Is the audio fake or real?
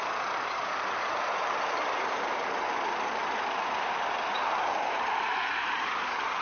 fake